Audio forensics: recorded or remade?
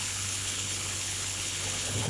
remade